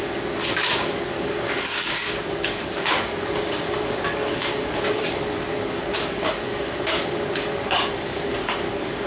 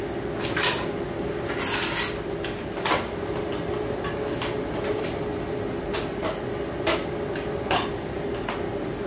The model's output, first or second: first